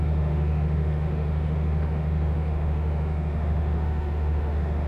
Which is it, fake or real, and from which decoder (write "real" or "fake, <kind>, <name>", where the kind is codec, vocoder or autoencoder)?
fake, autoencoder, DAC-VAE